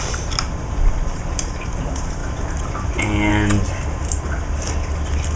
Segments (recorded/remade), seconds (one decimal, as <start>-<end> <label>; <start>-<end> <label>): 0.0-5.4 recorded